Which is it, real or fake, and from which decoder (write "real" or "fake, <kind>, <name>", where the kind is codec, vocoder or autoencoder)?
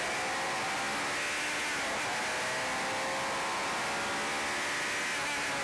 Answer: real